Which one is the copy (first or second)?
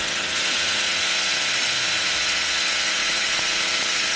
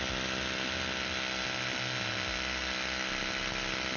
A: first